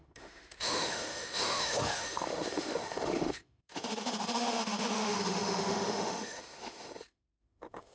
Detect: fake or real fake